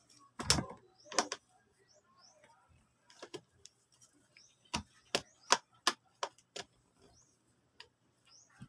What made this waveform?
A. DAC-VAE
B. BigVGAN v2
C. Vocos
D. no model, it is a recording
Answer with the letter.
D